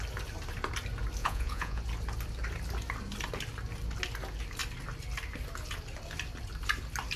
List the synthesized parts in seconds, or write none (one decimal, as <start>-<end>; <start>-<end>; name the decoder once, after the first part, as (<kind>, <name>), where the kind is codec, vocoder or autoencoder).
1.2-1.8 (vocoder, Vocos)